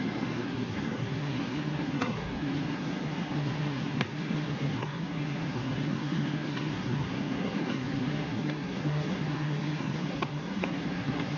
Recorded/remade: remade